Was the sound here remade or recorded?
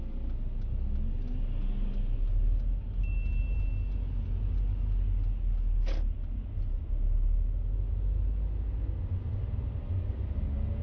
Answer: recorded